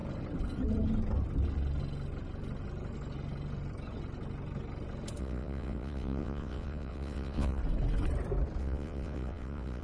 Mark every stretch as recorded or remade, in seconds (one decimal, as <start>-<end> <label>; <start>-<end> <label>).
0.0-5.2 recorded; 5.2-7.6 remade; 7.6-8.6 recorded; 8.6-9.8 remade